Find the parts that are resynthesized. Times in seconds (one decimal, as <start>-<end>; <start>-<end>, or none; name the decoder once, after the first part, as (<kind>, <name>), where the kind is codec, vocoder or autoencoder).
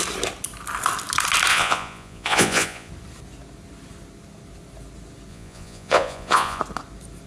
1.5-2.9 (vocoder, Vocos); 5.3-6.6